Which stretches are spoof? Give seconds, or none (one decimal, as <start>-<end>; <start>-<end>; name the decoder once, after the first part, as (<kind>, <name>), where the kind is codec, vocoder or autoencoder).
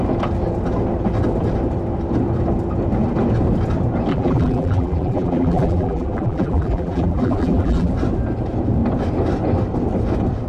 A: 4.1-7.9 (vocoder, BigVGAN v2)